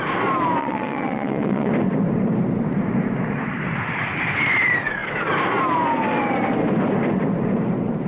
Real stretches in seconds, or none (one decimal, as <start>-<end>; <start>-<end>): 0.0-0.6; 1.7-8.1